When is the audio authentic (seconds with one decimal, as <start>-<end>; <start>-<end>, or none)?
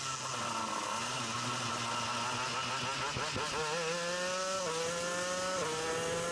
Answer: 0.0-6.3